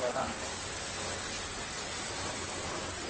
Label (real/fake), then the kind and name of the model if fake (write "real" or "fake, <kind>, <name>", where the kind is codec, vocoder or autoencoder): real